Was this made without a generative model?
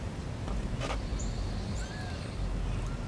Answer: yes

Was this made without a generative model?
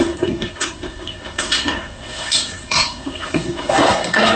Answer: no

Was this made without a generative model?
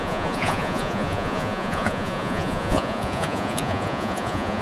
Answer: no